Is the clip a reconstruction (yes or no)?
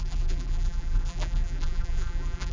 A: yes